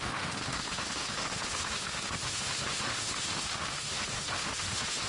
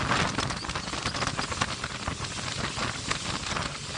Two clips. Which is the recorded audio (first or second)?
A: second